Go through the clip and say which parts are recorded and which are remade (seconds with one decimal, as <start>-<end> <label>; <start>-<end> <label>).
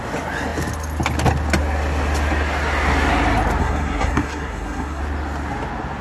0.0-3.6 recorded; 3.6-5.0 remade; 5.0-6.0 recorded